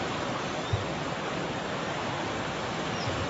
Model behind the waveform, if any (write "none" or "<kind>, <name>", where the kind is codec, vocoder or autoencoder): none